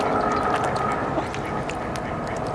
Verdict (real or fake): real